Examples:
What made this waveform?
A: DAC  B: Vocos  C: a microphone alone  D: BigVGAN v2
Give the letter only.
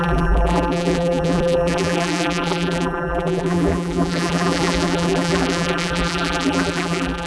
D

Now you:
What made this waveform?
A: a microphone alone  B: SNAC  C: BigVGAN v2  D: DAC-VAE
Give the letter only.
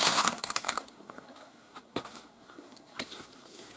B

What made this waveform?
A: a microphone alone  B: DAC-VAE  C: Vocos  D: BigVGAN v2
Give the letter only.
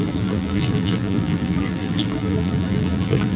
D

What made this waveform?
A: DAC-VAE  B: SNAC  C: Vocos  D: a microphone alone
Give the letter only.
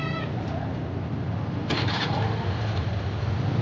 D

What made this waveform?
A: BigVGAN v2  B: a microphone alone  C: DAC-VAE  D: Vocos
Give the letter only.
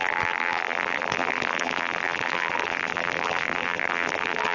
A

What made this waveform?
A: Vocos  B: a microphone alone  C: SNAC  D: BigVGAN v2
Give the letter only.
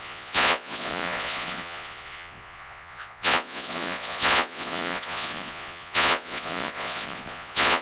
A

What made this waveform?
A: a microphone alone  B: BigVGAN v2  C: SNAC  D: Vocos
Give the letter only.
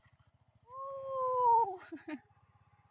A